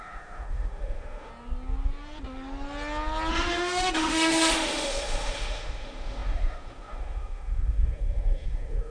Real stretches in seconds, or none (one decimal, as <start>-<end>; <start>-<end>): 1.3-3.3

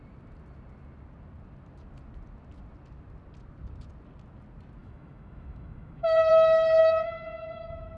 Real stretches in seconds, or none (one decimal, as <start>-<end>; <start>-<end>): 0.0-4.8; 6.3-6.8

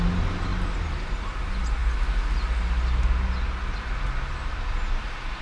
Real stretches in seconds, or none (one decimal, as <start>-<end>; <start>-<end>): 0.0-5.4

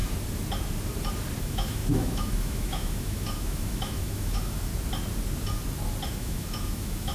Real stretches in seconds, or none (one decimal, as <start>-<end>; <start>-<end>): 0.0-1.4; 4.7-6.1